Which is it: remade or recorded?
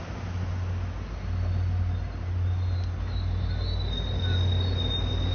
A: recorded